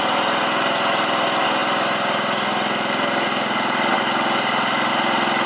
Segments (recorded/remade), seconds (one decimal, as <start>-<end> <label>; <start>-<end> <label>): 0.0-5.5 recorded